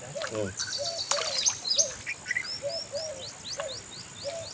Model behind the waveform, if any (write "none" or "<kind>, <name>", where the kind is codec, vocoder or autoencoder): none